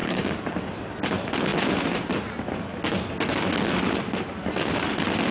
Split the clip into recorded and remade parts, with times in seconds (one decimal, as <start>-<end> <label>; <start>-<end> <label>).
0.0-0.5 remade; 0.5-5.3 recorded